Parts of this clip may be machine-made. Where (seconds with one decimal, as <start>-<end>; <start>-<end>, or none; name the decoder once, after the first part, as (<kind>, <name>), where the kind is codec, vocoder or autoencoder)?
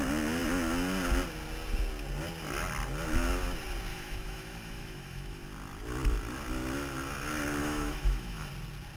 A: 3.9-5.4 (autoencoder, DAC-VAE); 7.6-8.5